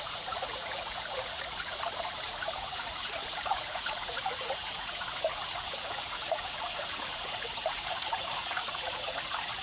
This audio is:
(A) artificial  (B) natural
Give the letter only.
A